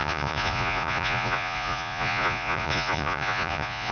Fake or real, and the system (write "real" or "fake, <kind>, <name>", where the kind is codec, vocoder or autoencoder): fake, vocoder, Vocos